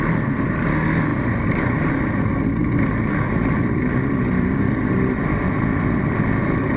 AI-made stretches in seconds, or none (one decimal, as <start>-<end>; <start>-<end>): 1.1-1.9